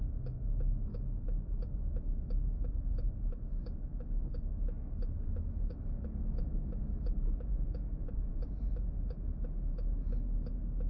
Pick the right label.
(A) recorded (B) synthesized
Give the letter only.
B